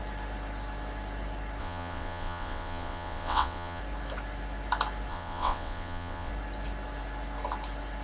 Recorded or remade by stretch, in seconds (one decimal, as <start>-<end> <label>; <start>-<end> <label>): 0.0-1.6 recorded; 1.6-3.8 remade; 3.8-5.1 recorded; 5.1-6.3 remade; 6.3-8.0 recorded

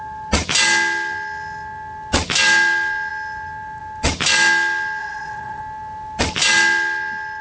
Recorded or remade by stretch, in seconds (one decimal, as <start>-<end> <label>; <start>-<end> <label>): 0.0-5.0 recorded; 5.0-5.6 remade; 5.6-7.4 recorded

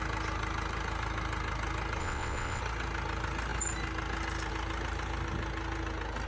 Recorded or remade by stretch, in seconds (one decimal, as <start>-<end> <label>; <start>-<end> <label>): 0.0-2.0 recorded; 2.0-2.6 remade; 2.6-6.3 recorded